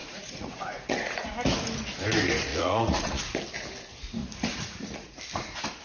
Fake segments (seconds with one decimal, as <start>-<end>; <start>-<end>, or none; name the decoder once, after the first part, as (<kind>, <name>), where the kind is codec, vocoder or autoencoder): 0.0-1.3 (vocoder, Vocos); 2.5-3.2; 4.2-5.2

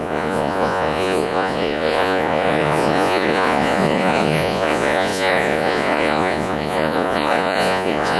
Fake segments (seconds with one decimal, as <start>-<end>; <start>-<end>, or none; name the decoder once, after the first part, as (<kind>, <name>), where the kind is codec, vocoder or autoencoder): 0.0-8.2 (vocoder, Vocos)